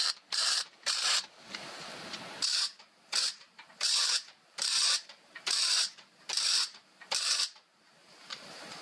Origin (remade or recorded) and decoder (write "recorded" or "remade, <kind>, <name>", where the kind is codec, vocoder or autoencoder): remade, vocoder, BigVGAN v2